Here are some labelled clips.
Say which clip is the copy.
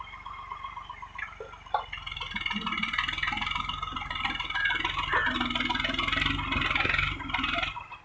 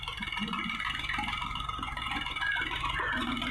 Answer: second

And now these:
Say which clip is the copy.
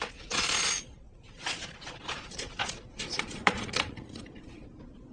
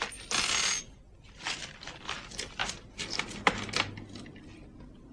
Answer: first